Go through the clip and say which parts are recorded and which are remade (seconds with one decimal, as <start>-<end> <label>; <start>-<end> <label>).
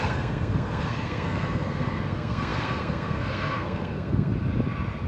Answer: 0.0-4.3 remade; 4.3-5.1 recorded